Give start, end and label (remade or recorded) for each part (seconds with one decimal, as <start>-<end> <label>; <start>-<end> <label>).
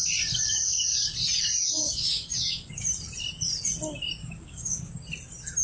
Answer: 0.0-0.5 recorded; 0.5-1.0 remade; 1.0-1.6 recorded; 1.6-2.7 remade; 2.7-4.2 recorded; 4.2-4.9 remade; 4.9-5.6 recorded